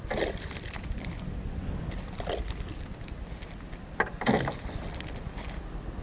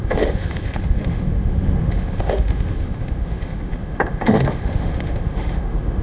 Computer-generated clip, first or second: second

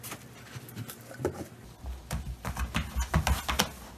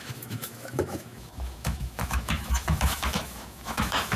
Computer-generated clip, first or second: second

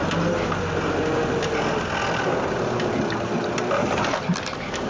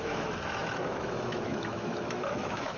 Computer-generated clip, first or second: second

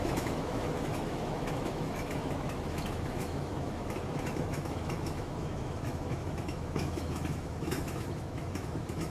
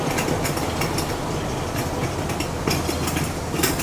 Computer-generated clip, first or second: first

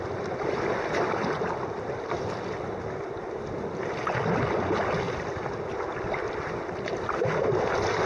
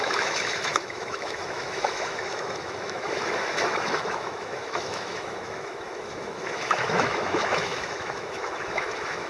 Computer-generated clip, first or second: second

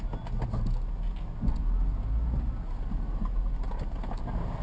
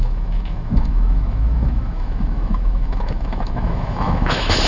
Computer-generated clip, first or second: second